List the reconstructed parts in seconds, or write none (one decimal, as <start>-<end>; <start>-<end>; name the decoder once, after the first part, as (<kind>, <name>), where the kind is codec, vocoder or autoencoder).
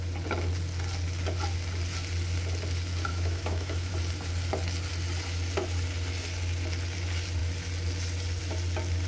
3.1-3.9 (autoencoder, DAC-VAE)